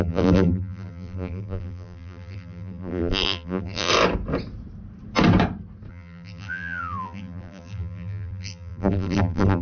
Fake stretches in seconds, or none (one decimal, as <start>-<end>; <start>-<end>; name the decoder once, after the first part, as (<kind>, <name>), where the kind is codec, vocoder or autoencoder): 0.0-3.9 (vocoder, BigVGAN v2); 5.9-9.6